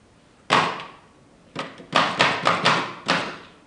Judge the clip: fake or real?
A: real